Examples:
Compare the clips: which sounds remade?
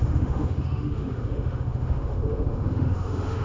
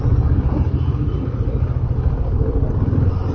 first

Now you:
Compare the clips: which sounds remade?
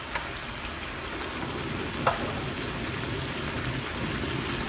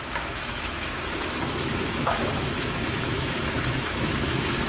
second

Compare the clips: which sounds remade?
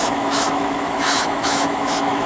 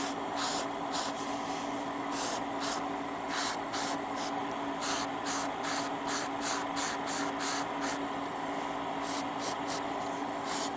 first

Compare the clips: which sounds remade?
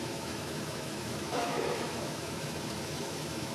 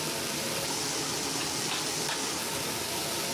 first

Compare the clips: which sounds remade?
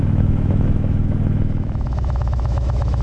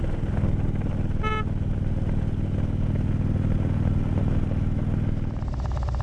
first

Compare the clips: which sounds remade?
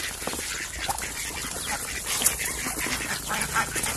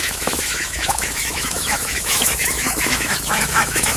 second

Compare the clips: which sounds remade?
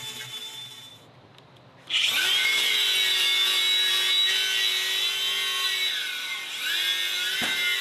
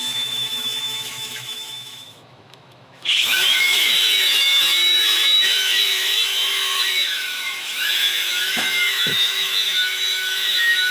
second